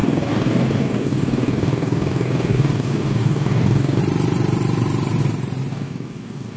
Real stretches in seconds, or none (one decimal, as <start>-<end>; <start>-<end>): 4.0-5.7

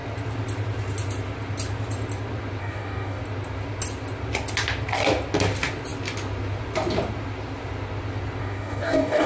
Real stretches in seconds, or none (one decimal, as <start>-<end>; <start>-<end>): 0.0-2.6; 3.2-8.4

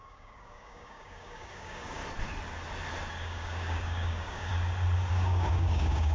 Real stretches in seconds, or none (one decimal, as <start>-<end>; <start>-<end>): 2.0-3.1; 4.5-5.1